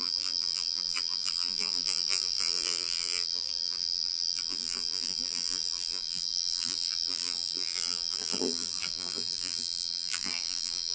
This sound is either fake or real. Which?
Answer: fake